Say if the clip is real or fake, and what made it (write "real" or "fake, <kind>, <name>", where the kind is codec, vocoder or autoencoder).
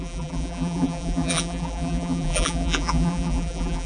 fake, vocoder, BigVGAN v2